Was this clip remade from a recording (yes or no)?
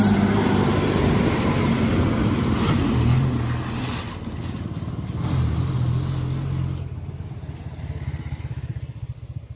no